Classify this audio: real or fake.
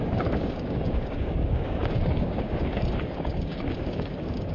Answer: fake